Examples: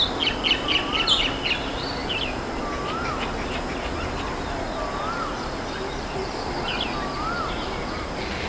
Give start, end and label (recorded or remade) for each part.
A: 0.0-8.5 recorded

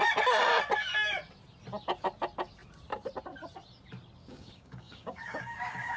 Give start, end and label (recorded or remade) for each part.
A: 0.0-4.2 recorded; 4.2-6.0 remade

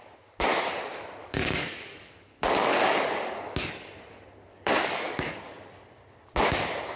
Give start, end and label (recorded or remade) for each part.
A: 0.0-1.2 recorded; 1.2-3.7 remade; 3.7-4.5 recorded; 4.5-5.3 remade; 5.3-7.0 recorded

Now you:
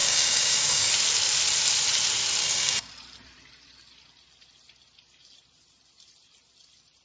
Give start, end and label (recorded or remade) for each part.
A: 0.0-0.9 remade; 0.9-2.4 recorded; 2.4-2.9 remade; 2.9-7.0 recorded

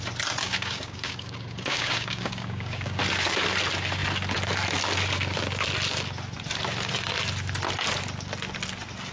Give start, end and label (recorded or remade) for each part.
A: 0.0-0.4 recorded; 0.4-3.0 remade; 3.0-9.1 recorded

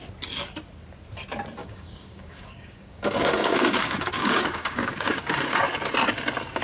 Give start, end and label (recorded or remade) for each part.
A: 0.0-1.6 recorded; 1.6-5.6 remade; 5.6-6.6 recorded